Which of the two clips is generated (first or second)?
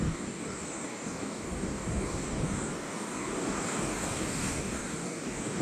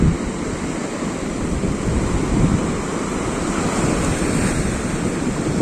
first